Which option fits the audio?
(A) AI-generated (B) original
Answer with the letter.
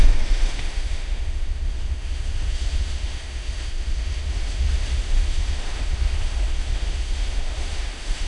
A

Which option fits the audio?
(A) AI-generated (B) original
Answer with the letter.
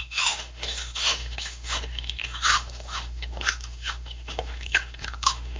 A